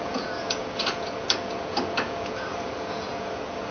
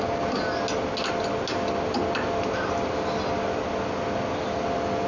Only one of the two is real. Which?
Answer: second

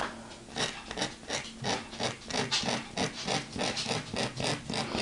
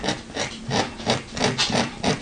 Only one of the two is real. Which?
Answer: first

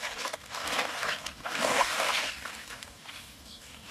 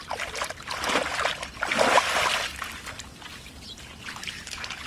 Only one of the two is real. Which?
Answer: second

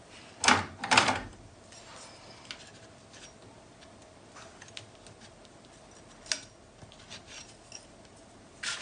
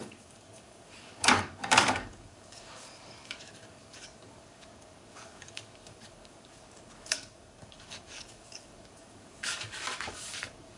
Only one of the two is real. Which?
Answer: first